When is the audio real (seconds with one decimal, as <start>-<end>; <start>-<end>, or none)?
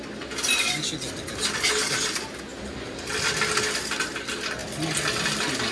0.0-5.7